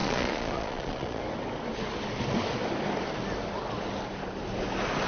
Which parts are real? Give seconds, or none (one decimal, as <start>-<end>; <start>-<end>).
1.2-5.1